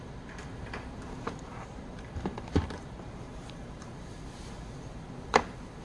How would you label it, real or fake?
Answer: fake